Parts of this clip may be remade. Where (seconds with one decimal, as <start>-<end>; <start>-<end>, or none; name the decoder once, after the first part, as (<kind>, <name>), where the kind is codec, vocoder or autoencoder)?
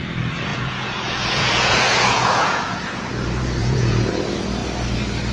0.5-3.1 (vocoder, Vocos); 3.6-4.1